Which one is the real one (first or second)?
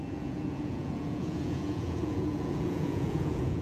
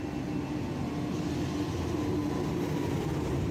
second